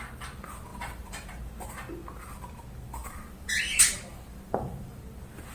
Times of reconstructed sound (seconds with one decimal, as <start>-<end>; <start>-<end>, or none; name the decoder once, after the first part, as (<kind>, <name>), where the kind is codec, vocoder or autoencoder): 0.7-1.4 (vocoder, BigVGAN v2); 3.0-5.0